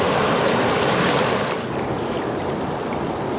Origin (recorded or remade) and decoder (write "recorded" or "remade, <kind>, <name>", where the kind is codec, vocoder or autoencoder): recorded